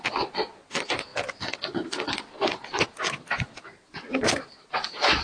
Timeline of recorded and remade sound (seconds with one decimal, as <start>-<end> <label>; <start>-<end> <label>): 0.0-5.2 recorded

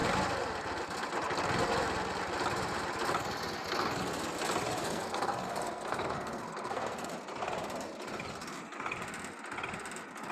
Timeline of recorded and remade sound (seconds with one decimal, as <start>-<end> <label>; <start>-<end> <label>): 0.0-4.8 recorded; 4.8-7.1 remade; 7.1-10.3 recorded

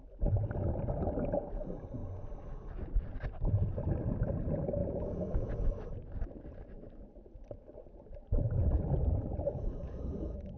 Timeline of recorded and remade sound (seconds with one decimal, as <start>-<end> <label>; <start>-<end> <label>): 0.0-4.8 recorded; 4.8-5.7 remade; 5.7-8.6 recorded; 8.6-10.6 remade